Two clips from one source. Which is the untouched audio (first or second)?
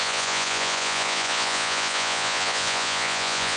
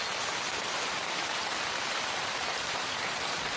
second